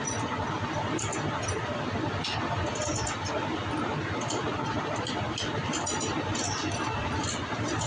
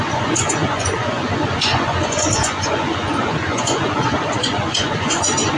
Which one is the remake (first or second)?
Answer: second